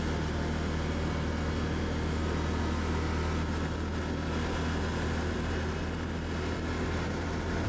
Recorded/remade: recorded